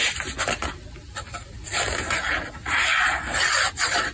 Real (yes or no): yes